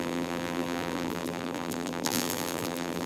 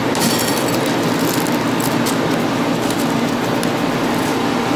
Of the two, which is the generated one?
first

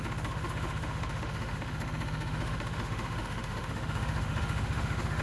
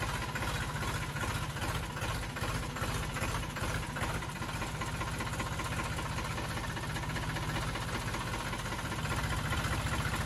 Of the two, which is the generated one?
first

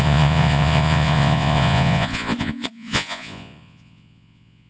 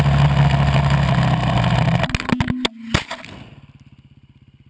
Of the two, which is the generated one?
first